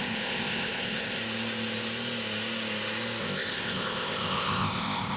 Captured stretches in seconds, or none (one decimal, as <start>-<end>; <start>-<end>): 1.2-3.2